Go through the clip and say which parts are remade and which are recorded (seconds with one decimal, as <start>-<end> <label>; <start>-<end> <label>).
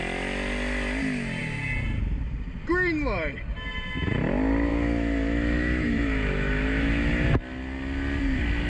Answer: 0.0-4.7 recorded; 4.7-7.4 remade; 7.4-8.7 recorded